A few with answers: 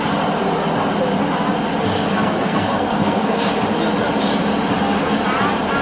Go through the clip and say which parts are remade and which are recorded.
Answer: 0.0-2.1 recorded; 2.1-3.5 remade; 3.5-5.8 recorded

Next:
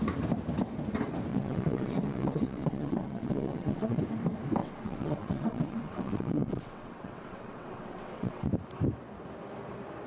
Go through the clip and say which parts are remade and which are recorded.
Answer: 0.0-1.3 recorded; 1.3-4.0 remade; 4.0-4.6 recorded; 4.6-8.5 remade; 8.5-10.1 recorded